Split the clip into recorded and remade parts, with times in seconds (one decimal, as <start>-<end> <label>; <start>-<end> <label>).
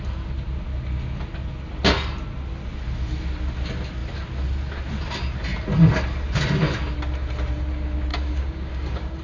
0.0-8.1 recorded; 8.1-9.2 remade